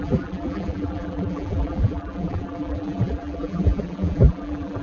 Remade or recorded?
remade